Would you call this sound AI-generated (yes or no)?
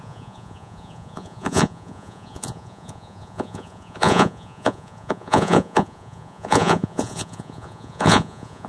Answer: yes